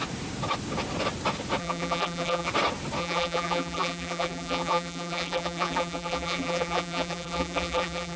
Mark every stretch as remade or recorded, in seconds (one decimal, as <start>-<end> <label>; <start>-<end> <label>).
0.0-1.6 recorded; 1.6-2.5 remade; 2.5-3.0 recorded; 3.0-8.2 remade